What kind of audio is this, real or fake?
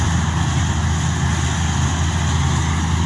real